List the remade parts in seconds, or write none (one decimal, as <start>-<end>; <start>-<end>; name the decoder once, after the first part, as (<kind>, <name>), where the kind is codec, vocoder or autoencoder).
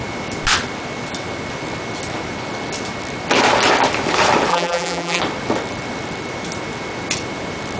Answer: 4.5-5.2 (vocoder, BigVGAN v2)